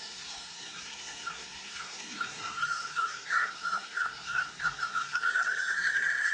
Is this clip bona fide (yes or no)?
no